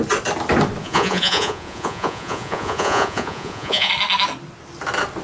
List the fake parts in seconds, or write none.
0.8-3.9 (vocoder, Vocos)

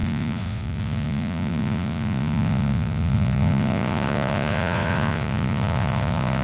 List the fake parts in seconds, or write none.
0.0-6.4 (vocoder, Vocos)

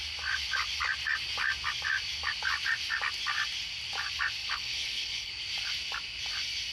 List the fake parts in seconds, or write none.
4.4-5.3 (codec, HILCodec)

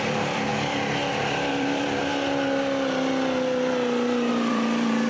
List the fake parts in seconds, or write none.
0.0-0.5 (vocoder, BigVGAN v2); 1.5-2.1; 4.3-5.1

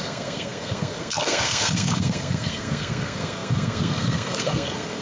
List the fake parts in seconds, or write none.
0.0-5.0 (codec, SNAC)

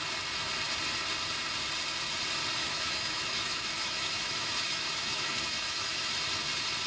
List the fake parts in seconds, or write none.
2.6-6.1 (autoencoder, DAC-VAE)

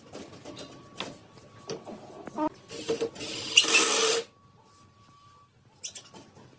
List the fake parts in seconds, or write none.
none